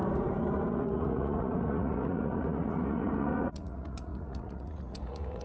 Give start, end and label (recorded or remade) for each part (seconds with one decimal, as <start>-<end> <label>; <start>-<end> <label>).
0.0-0.7 recorded; 0.7-5.4 remade